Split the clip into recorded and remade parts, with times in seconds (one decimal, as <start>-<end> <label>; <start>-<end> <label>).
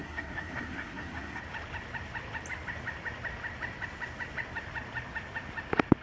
0.0-1.4 remade; 1.4-6.0 recorded